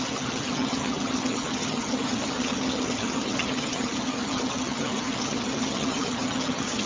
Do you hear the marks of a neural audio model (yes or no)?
yes